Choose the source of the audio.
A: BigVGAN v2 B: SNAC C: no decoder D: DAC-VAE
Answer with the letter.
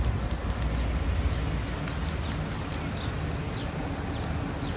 C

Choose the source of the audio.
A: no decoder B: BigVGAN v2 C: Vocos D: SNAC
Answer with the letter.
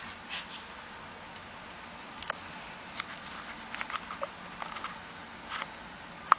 A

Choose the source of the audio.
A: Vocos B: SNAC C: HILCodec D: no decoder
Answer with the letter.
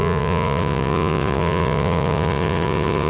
A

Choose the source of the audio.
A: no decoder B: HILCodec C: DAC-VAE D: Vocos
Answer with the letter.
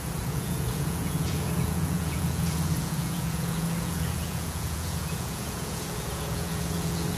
D